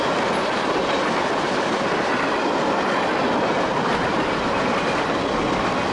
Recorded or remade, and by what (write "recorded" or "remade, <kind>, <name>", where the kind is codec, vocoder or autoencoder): recorded